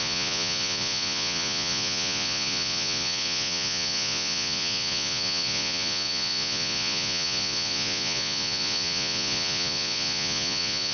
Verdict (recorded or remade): remade